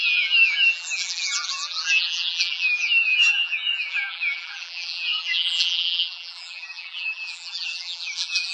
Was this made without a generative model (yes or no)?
no